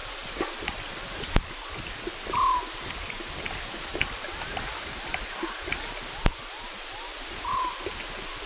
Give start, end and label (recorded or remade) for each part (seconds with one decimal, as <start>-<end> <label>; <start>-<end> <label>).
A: 0.0-8.5 recorded